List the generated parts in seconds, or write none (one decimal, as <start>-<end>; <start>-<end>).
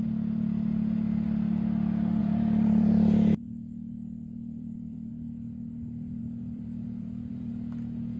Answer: 2.2-5.1; 6.2-7.5